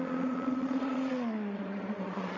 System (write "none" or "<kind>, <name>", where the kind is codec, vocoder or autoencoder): vocoder, Vocos